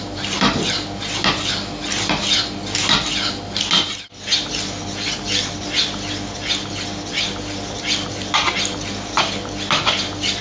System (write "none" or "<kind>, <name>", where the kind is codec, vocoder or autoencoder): none